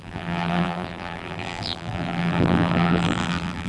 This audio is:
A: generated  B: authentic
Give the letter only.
A